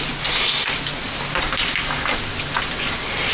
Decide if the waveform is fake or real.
real